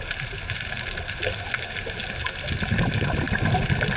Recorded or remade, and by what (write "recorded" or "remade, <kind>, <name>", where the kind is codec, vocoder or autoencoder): recorded